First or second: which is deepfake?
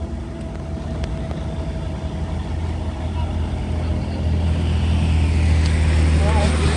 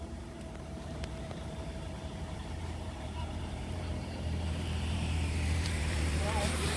second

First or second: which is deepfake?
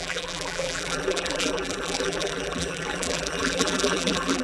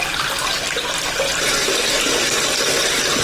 first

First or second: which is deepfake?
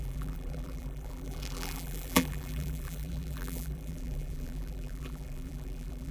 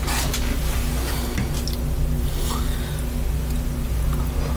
first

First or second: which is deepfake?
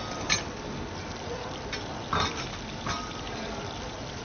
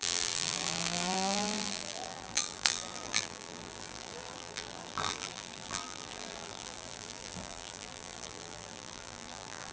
second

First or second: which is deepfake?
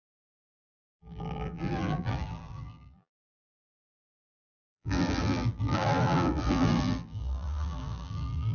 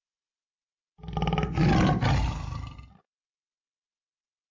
first